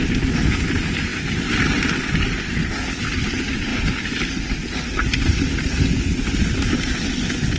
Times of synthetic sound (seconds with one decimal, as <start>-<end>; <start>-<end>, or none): none